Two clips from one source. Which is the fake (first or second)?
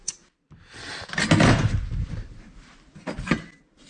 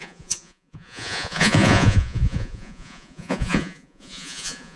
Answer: second